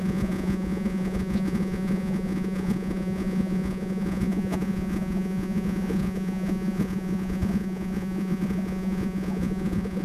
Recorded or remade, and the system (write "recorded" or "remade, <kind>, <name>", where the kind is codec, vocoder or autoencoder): remade, vocoder, Vocos